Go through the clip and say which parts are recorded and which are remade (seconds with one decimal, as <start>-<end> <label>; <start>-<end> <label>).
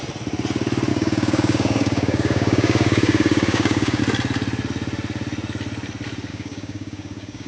0.0-0.9 recorded; 0.9-4.0 remade; 4.0-6.3 recorded; 6.3-7.5 remade